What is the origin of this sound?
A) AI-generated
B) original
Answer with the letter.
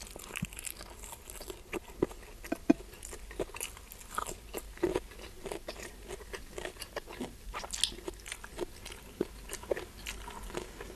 B